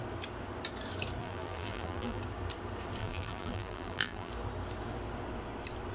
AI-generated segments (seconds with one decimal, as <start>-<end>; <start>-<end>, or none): 1.2-2.2; 3.0-4.3

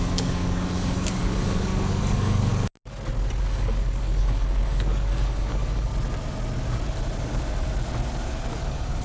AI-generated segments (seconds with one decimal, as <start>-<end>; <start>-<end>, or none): 0.0-2.5; 3.4-5.9; 8.5-9.0

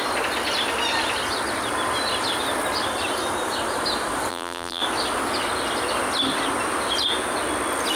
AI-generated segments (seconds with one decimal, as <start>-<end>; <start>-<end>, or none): 4.3-4.8

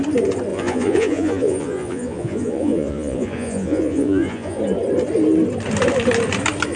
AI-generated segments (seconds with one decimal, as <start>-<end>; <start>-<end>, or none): 0.5-4.6

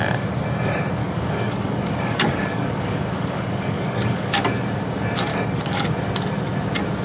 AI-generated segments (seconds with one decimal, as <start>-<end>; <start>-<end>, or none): 1.0-4.4; 5.3-5.9

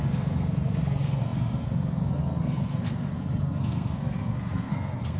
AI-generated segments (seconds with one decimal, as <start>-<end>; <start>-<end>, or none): 0.0-5.2

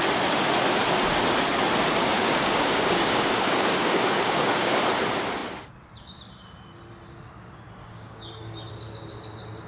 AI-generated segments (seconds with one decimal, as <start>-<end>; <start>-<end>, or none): 2.0-4.8; 7.8-8.7